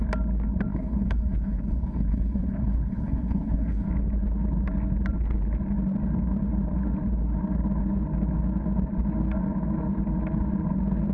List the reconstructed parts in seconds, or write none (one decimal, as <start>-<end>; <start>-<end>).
0.7-3.9